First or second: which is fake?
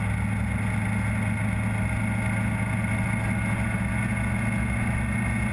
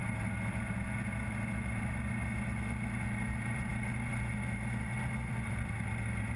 second